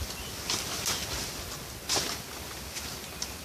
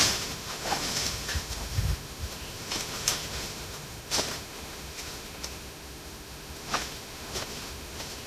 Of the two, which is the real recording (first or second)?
first